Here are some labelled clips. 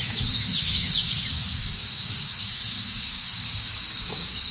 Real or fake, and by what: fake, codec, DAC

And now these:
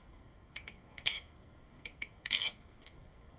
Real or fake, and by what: fake, codec, SNAC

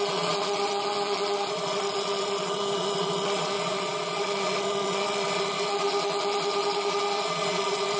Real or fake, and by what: fake, vocoder, Vocos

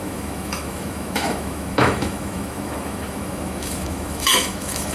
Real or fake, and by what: fake, autoencoder, DAC-VAE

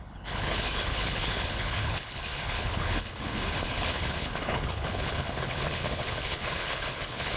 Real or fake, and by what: fake, codec, HILCodec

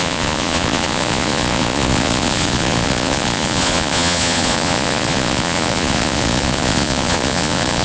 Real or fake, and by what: fake, vocoder, Vocos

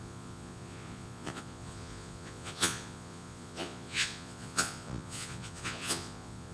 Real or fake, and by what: fake, vocoder, Vocos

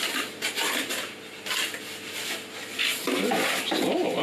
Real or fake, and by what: real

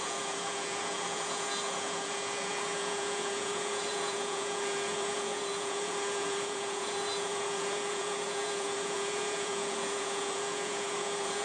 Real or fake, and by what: fake, vocoder, Vocos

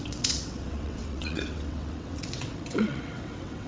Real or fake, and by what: fake, vocoder, WaveNeXt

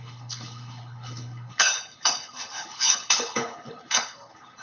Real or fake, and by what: fake, codec, HILCodec